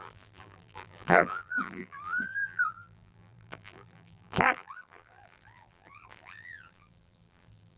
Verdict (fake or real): fake